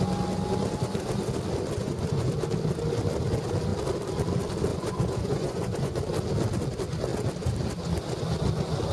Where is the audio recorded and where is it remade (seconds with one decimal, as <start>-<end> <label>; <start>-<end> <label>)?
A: 0.0-1.8 recorded; 1.8-2.3 remade; 2.3-4.7 recorded; 4.7-6.0 remade; 6.0-8.9 recorded